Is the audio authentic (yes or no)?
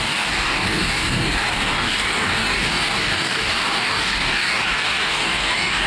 no